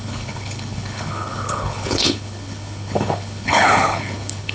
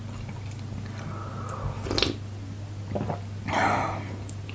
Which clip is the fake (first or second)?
first